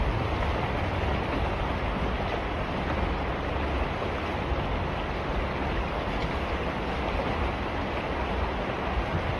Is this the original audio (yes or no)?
yes